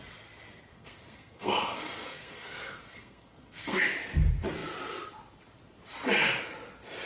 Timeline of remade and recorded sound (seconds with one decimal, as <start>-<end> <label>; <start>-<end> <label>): 0.0-0.7 recorded; 0.7-3.8 remade; 3.8-7.1 recorded